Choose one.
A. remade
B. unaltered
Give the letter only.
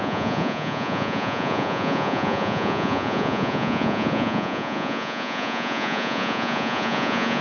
A